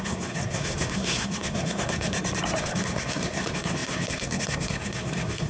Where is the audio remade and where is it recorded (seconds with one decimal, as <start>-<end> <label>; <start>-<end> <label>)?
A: 0.0-2.1 remade; 2.1-2.6 recorded; 2.6-5.5 remade